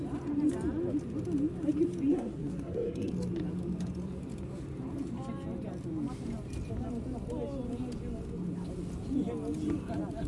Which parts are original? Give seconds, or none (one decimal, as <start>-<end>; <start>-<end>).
0.0-2.1; 3.1-10.3